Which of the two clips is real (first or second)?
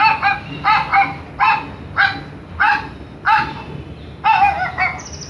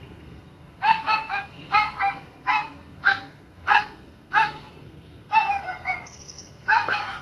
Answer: first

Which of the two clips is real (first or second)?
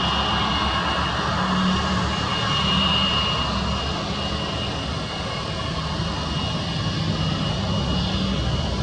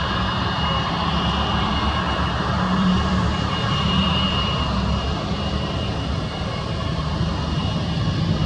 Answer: first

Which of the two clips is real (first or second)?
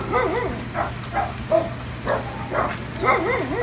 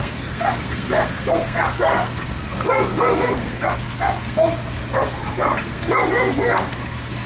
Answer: first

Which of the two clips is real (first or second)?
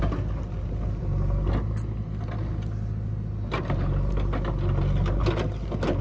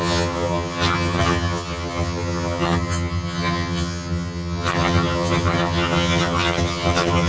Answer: first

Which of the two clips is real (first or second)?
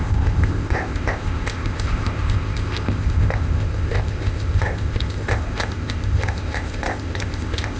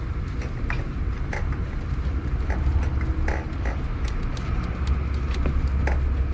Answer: second